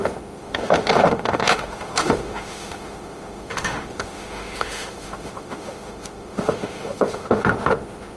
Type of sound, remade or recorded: remade